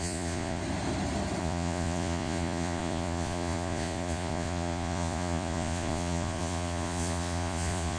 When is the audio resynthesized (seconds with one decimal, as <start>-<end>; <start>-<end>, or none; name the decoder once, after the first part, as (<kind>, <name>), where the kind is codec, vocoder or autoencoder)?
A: 0.0-0.6 (vocoder, Vocos); 1.4-8.0